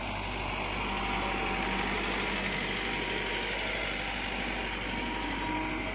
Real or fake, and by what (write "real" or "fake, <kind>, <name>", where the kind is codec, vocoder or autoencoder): real